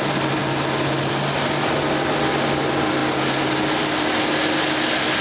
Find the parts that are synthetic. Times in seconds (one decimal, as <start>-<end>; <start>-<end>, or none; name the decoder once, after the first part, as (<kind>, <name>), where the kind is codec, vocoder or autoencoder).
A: none